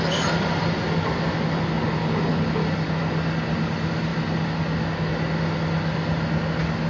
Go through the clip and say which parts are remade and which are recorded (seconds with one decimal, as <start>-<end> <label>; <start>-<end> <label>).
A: 0.0-6.9 recorded